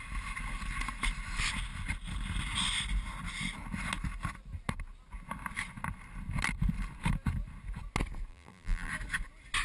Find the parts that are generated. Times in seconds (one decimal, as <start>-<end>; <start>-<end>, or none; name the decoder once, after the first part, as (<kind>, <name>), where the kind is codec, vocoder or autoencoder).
8.3-8.9 (vocoder, BigVGAN v2)